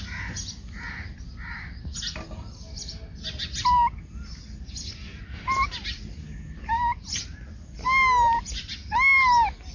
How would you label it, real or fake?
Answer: real